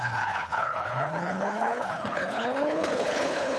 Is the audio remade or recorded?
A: remade